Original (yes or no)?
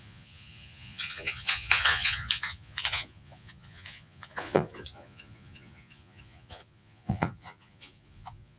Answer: no